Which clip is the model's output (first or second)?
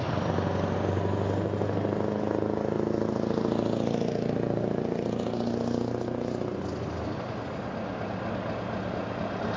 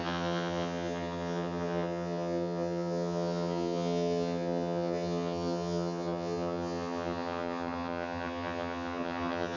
second